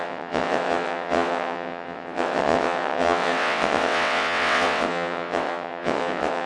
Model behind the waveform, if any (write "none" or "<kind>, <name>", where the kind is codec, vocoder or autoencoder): vocoder, WaveNeXt